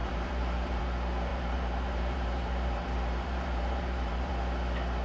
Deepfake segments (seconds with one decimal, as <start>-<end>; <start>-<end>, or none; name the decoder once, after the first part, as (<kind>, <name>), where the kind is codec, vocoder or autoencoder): 0.0-0.8 (vocoder, BigVGAN v2); 1.3-4.3